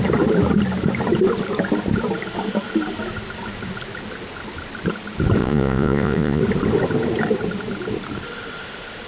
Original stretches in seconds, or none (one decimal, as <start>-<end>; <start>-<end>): 0.0-5.4; 6.4-9.1